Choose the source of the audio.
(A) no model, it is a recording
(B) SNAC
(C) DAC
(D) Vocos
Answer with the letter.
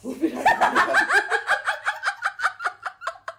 A